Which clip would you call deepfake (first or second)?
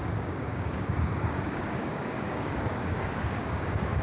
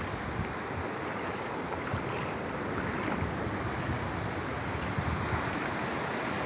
first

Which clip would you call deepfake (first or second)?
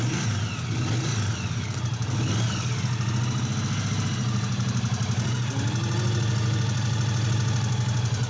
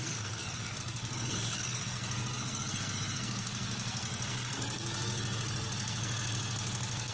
second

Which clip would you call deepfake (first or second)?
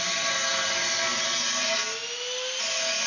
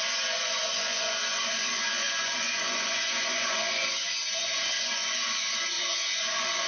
second